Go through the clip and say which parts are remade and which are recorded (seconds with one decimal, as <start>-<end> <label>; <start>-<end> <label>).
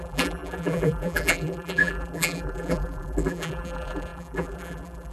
0.0-5.1 remade